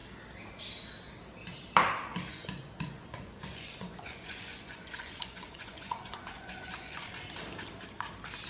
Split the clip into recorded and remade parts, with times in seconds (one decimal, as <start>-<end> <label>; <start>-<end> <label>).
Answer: 0.0-2.3 recorded; 2.3-7.1 remade; 7.1-8.5 recorded